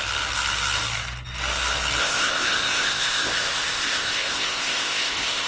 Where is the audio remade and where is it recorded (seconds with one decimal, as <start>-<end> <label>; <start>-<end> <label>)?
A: 0.0-2.0 recorded; 2.0-5.5 remade